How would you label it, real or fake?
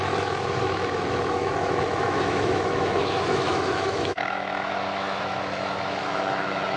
fake